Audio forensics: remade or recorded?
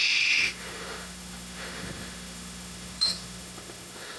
remade